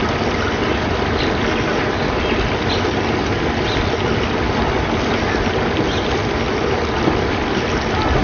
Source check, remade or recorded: recorded